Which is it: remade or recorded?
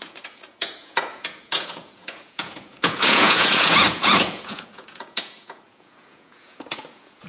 remade